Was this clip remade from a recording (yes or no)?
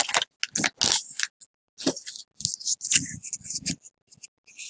no